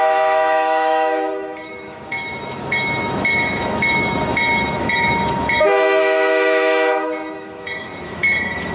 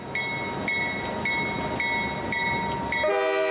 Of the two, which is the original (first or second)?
second